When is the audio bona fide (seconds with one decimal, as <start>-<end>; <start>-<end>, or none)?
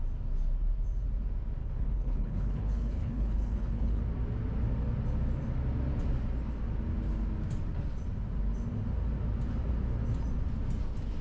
0.0-1.6; 4.0-11.2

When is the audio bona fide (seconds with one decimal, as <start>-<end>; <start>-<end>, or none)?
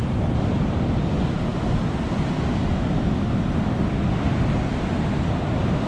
0.0-5.9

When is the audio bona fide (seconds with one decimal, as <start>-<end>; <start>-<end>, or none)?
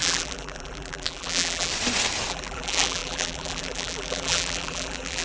1.7-2.3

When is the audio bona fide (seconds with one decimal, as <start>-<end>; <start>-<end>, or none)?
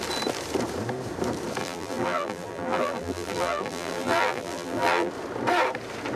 0.0-1.6; 5.1-6.2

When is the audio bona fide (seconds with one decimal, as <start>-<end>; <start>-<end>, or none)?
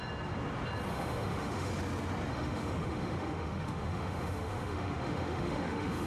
0.0-0.9; 1.7-2.3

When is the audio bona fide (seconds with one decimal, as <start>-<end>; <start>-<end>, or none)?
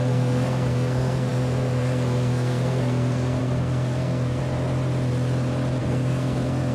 4.4-5.8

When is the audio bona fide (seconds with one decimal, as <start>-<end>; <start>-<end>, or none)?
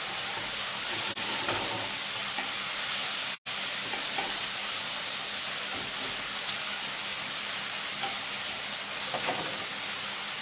0.0-10.4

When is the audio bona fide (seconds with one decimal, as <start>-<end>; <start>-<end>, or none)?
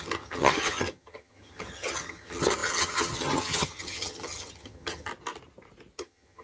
5.1-6.0